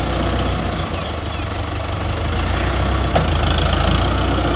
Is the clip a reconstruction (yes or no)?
no